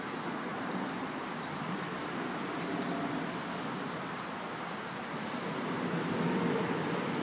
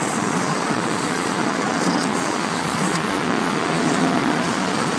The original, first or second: first